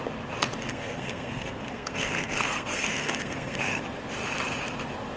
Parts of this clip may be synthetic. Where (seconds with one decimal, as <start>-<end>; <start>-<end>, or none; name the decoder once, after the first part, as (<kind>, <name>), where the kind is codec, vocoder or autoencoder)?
0.7-3.8 (codec, SNAC)